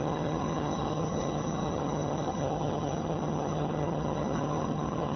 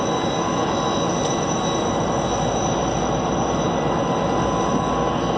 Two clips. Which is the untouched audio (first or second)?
second